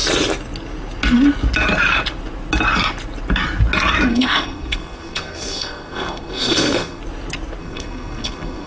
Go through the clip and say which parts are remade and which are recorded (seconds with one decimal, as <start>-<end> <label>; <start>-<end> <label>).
0.0-4.1 recorded; 4.1-7.0 remade; 7.0-7.6 recorded; 7.6-8.7 remade